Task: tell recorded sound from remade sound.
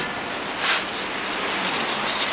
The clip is recorded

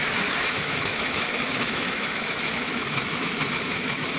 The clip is remade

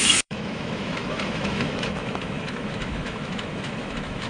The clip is remade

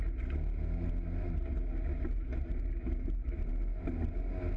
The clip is recorded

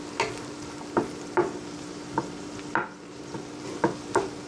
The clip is recorded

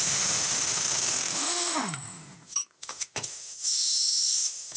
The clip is remade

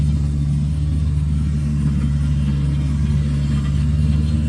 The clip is recorded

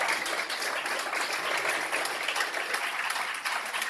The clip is recorded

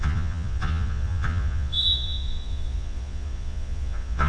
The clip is remade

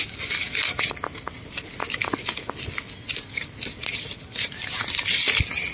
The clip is recorded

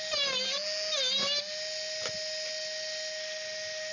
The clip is recorded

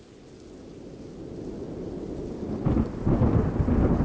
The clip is recorded